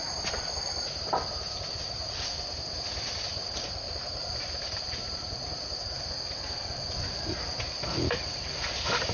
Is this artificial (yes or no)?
no